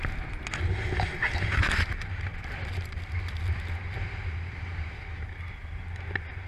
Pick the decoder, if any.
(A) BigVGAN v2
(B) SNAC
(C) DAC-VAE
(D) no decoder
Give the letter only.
D